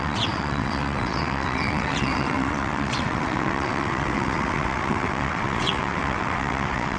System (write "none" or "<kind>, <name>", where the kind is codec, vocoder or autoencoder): vocoder, WaveNeXt